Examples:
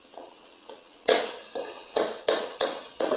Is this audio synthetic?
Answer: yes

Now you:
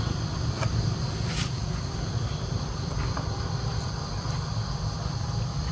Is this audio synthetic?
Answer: yes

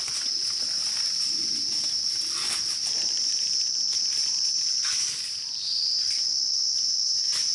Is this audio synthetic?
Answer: yes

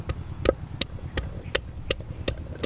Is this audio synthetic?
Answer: no